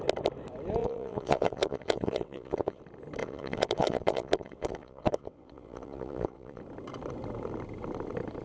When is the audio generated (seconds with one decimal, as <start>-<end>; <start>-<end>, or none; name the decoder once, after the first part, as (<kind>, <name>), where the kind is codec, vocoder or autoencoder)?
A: 0.8-2.8 (vocoder, WaveNeXt); 3.2-6.6